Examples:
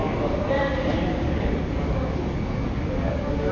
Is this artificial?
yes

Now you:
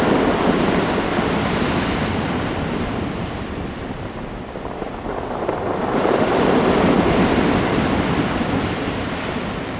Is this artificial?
no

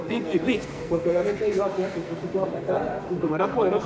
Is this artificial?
yes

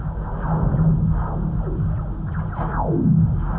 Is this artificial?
no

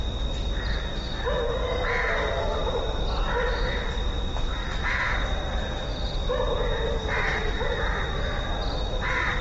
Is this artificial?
no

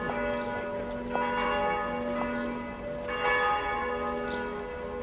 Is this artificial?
no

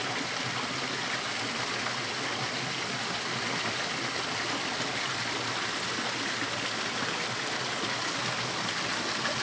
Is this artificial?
no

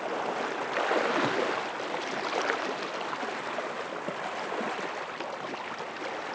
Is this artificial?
no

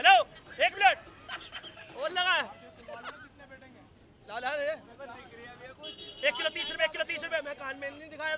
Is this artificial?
no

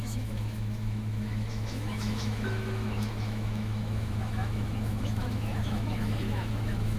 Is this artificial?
yes